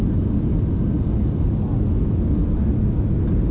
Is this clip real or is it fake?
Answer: real